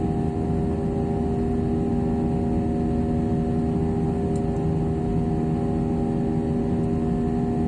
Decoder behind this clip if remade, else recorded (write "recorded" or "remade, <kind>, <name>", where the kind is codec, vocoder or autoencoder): recorded